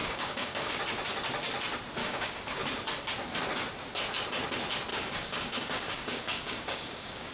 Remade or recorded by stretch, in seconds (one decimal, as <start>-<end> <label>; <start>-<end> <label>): 0.0-0.7 remade; 0.7-2.0 recorded; 2.0-2.6 remade; 2.6-4.9 recorded; 4.9-7.3 remade